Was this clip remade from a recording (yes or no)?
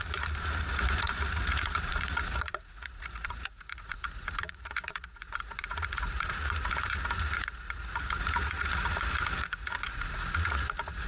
yes